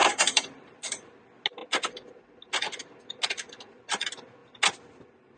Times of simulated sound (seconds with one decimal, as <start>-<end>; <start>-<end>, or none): 0.0-1.2